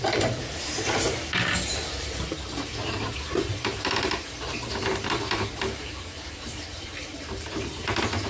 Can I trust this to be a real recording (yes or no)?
no